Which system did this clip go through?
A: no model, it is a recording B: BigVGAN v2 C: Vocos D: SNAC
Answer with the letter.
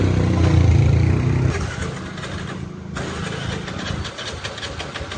A